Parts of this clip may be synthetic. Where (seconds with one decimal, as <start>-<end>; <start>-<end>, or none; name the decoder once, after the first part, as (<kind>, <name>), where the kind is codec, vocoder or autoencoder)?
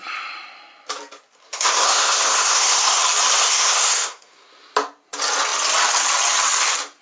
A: 1.4-3.0 (codec, SNAC); 3.4-4.7